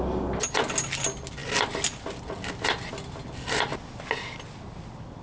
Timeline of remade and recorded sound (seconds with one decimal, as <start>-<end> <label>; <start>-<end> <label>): 0.0-5.2 recorded

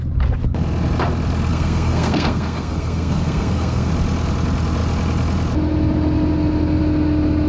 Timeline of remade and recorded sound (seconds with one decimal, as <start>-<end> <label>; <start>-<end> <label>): 0.0-1.5 recorded; 1.5-3.9 remade; 3.9-7.5 recorded

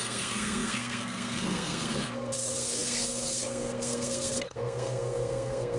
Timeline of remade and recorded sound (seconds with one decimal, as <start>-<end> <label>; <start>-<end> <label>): 0.0-5.8 remade

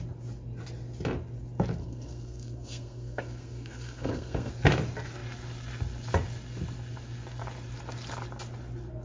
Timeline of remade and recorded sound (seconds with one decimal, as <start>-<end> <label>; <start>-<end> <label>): 0.0-1.8 recorded; 1.8-4.5 remade; 4.5-9.0 recorded